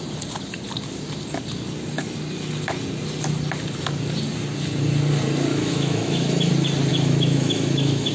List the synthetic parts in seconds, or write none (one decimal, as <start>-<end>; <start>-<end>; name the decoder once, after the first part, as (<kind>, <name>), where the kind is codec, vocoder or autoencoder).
5.5-6.5 (autoencoder, DAC-VAE); 6.9-8.1